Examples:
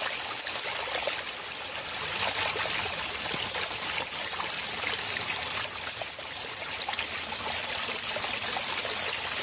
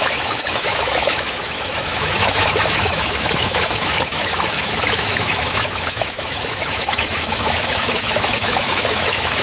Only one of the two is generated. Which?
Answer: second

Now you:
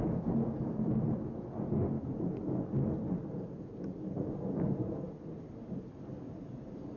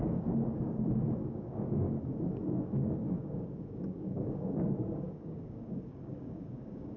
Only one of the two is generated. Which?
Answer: second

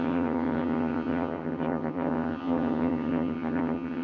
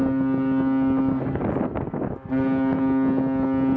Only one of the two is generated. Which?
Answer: first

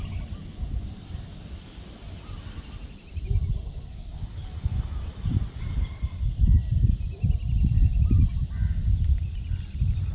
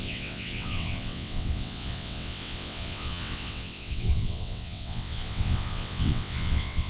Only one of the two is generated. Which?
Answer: second